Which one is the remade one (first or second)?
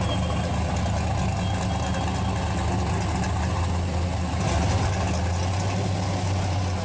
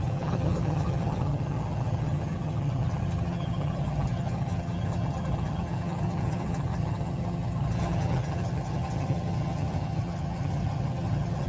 second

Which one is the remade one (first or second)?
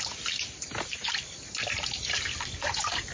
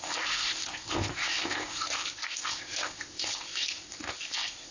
second